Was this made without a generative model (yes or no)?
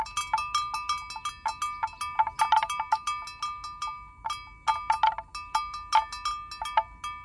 yes